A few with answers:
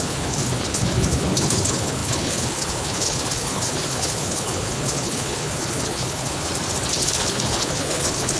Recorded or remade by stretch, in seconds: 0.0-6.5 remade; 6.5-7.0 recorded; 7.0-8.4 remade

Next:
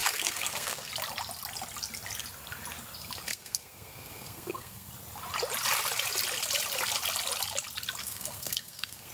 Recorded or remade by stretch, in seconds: 0.0-0.9 remade; 0.9-3.3 recorded; 3.3-4.9 remade; 4.9-8.0 recorded; 8.0-9.1 remade

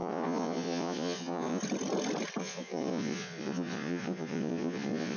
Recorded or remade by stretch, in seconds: 0.0-1.6 remade; 1.6-2.4 recorded; 2.4-5.2 remade

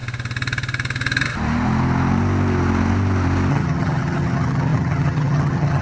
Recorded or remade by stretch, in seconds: 0.0-3.5 recorded; 3.5-5.8 remade

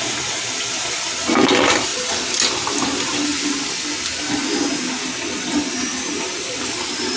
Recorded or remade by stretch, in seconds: 0.0-7.2 recorded

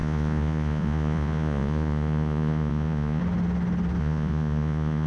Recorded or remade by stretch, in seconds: 0.0-3.2 remade; 3.2-4.0 recorded; 4.0-5.1 remade